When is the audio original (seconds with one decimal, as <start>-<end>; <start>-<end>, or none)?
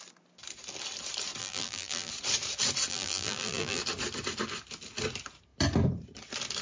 0.0-1.4; 2.1-2.9; 3.8-6.6